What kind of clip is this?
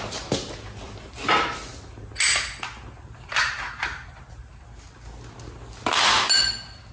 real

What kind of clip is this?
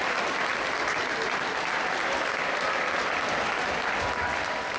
real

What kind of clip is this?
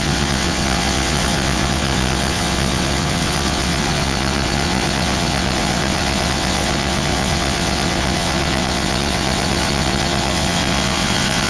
fake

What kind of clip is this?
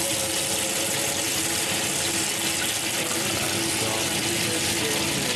real